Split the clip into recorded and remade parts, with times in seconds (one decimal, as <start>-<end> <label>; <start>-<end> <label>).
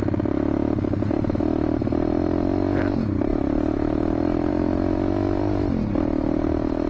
0.0-6.9 recorded